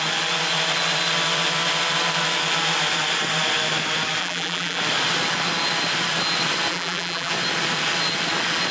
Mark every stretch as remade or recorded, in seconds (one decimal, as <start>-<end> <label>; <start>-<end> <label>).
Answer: 0.0-4.2 recorded; 4.2-4.8 remade; 4.8-6.7 recorded; 6.7-7.3 remade; 7.3-8.7 recorded